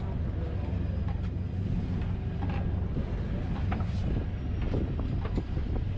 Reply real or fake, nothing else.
real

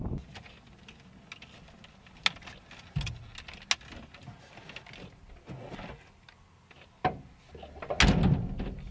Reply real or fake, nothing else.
real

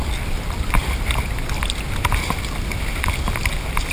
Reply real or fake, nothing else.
real